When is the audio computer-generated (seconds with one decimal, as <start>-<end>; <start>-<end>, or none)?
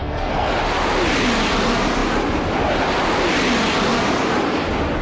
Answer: 0.0-0.5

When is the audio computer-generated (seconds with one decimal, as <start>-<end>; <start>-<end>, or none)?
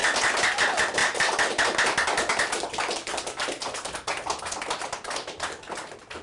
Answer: none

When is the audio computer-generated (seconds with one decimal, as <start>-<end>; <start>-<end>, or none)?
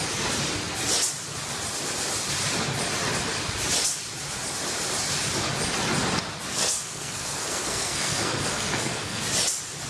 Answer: 6.5-9.2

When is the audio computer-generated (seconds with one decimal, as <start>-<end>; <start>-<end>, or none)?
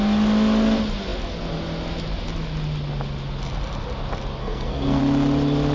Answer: 4.4-5.0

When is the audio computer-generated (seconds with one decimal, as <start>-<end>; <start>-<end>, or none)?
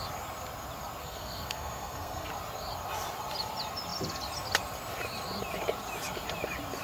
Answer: 1.0-2.3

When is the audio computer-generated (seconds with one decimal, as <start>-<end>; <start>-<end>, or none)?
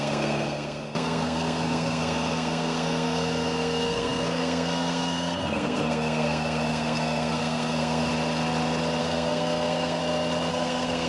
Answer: 0.0-8.1; 9.0-10.0; 10.5-11.1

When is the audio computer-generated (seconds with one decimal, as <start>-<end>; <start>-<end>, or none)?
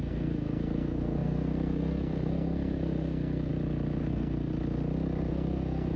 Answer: 0.0-3.5; 4.1-4.5; 5.3-6.0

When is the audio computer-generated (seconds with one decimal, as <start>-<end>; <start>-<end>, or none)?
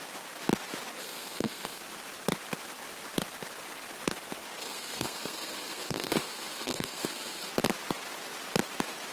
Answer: 1.0-1.8; 4.6-7.5